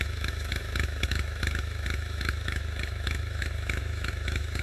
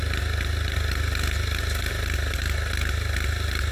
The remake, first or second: first